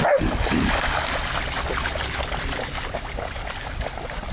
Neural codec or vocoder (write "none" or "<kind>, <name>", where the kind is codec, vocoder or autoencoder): none